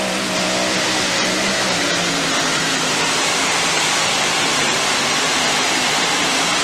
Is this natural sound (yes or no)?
no